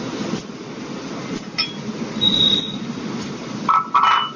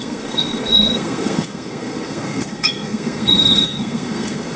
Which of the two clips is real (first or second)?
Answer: first